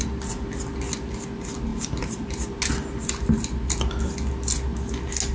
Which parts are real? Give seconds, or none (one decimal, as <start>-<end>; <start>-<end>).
0.0-1.7; 2.5-5.3